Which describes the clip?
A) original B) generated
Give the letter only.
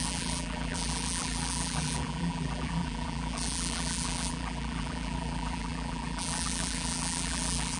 B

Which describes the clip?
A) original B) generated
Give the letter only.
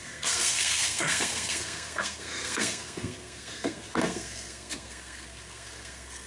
B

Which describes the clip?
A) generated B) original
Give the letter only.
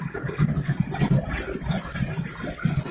B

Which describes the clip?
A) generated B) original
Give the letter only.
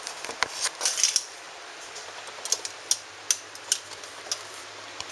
B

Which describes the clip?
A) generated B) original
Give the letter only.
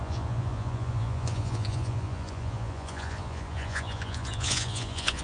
A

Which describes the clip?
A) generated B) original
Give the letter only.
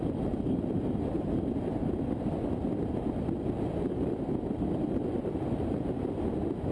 B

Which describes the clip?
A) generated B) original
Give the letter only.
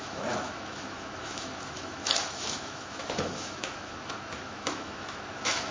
A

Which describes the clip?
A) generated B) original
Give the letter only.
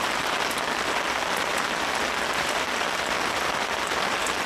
B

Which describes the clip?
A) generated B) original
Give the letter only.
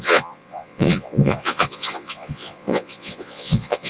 A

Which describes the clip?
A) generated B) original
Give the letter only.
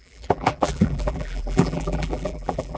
A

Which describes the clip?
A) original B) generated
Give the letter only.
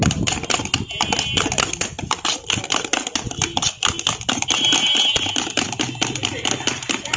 A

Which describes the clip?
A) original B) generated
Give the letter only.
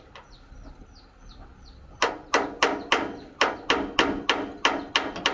A